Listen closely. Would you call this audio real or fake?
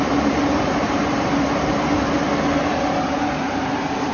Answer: fake